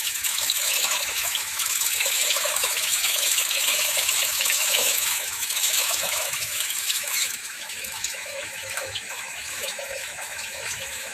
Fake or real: fake